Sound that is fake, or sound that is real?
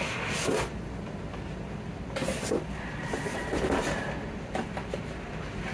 real